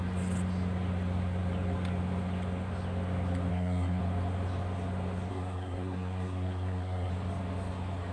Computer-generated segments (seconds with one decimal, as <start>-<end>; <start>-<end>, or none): 3.5-4.0; 5.3-7.1